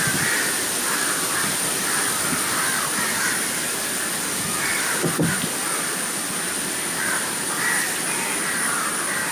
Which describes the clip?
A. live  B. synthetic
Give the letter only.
A